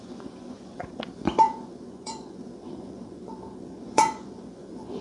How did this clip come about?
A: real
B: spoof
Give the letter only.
B